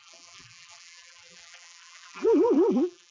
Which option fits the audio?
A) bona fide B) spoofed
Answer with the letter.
B